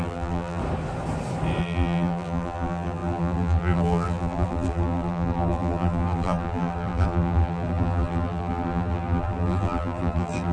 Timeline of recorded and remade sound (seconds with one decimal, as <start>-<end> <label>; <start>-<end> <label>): 0.0-0.6 remade; 0.6-1.6 recorded; 1.6-10.5 remade